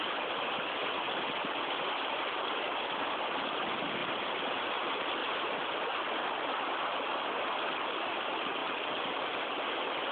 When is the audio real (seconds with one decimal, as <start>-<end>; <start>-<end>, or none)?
0.0-4.0; 4.7-5.2; 5.7-10.1